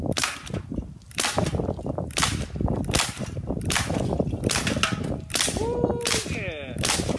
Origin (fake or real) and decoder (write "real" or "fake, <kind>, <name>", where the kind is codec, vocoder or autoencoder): real